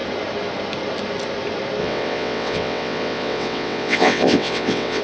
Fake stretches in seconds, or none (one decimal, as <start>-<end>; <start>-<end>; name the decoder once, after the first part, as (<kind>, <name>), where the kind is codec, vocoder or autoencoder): 1.8-5.0 (vocoder, WaveNeXt)